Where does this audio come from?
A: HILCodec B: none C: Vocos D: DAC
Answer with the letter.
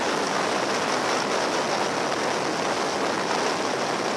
B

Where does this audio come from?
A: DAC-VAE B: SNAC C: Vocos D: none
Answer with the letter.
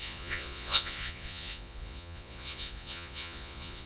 C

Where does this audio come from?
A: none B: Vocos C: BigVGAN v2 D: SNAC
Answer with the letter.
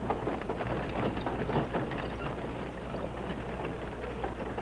A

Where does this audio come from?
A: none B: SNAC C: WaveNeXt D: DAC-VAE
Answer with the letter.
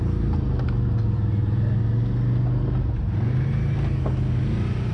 A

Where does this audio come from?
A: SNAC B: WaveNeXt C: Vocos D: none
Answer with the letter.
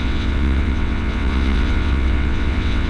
B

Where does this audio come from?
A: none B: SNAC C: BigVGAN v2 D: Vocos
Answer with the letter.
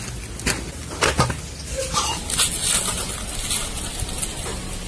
A